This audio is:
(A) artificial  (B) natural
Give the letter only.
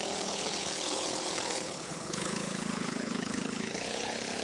A